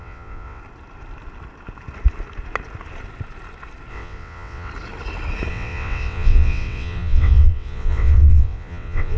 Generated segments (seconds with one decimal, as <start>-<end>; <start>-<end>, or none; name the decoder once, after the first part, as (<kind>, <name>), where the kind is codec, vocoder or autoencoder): 0.0-0.6 (vocoder, WaveNeXt); 3.9-4.7; 5.5-9.2